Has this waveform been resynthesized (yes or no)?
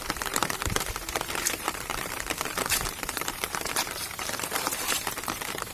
yes